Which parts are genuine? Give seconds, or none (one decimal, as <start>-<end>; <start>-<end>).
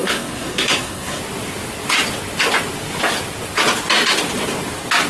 1.2-5.1